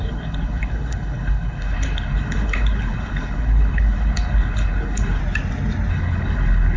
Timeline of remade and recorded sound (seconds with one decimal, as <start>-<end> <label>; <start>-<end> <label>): 0.0-5.2 remade; 5.2-5.9 recorded; 5.9-6.8 remade